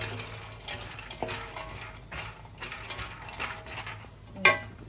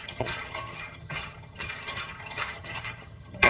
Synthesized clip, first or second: second